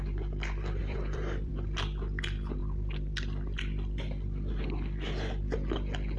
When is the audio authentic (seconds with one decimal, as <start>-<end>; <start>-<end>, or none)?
0.0-0.8; 1.5-6.2